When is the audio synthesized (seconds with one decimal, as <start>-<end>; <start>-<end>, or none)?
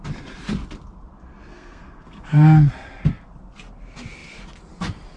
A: 1.5-2.7